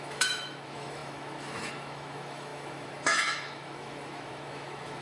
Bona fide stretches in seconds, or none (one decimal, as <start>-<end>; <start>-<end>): none